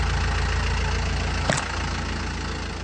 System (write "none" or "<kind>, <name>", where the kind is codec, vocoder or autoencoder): none